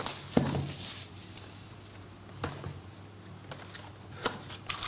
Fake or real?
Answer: real